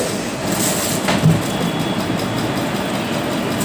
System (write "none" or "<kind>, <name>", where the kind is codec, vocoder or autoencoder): none